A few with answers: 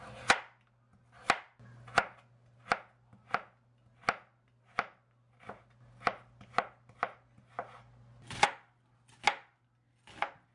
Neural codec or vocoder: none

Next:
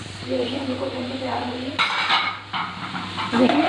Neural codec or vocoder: vocoder, BigVGAN v2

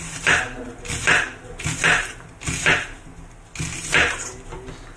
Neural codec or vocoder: none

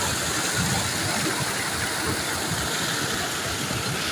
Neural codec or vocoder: none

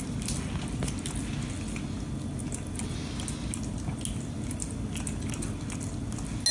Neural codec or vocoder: none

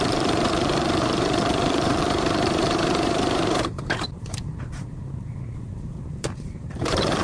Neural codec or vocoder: vocoder, BigVGAN v2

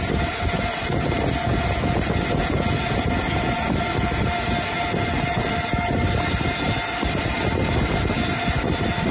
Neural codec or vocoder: none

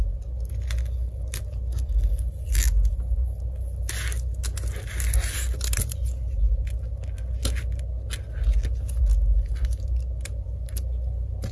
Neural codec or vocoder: none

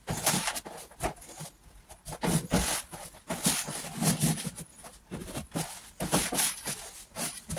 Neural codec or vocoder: vocoder, BigVGAN v2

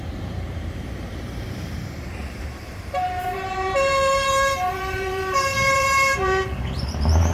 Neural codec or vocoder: vocoder, BigVGAN v2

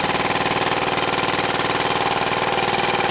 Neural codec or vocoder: none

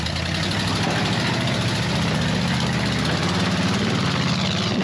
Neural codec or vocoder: vocoder, BigVGAN v2